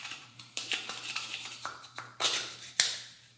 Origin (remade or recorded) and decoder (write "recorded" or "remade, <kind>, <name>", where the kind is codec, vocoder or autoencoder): remade, vocoder, BigVGAN v2